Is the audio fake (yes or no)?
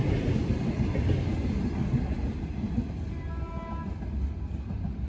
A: no